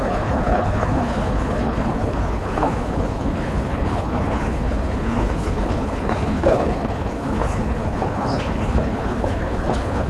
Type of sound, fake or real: fake